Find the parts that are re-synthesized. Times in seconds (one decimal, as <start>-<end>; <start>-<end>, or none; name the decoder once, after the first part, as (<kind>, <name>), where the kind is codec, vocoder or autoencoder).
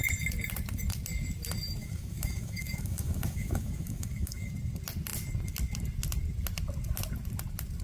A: 1.8-4.5 (autoencoder, DAC-VAE)